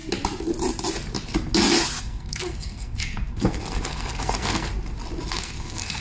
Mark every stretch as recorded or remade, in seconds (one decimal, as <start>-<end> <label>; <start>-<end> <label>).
0.0-2.0 recorded; 2.0-4.7 remade; 4.7-5.3 recorded; 5.3-6.0 remade